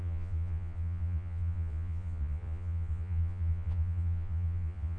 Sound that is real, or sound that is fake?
fake